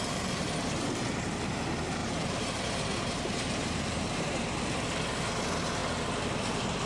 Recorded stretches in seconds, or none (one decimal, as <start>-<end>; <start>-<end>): 0.0-2.0; 4.5-6.9